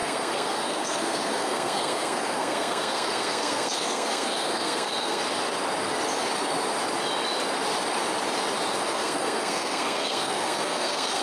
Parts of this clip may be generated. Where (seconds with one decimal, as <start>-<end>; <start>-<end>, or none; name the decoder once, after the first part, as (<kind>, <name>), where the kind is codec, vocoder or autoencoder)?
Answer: 0.0-5.2 (codec, SNAC); 8.8-11.2